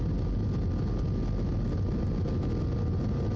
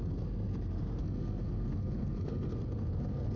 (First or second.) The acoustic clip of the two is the first